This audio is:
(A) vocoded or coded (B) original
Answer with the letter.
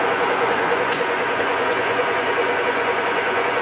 A